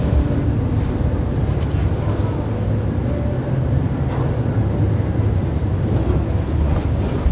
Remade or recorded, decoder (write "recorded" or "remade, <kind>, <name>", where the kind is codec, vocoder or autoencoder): recorded